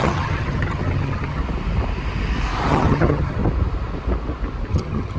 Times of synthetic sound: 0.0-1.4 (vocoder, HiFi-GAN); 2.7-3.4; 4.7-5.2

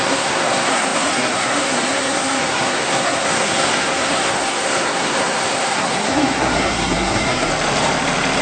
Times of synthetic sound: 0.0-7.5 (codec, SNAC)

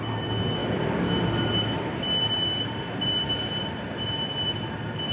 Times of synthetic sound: none

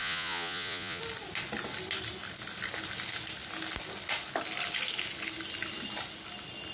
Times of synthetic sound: 0.0-1.0 (vocoder, Vocos)

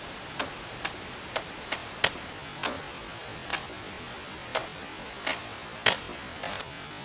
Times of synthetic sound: none

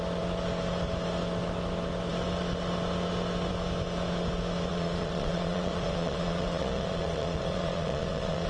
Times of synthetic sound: 4.7-8.5 (vocoder, Vocos)

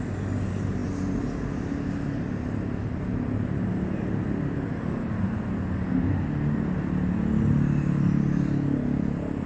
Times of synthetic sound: none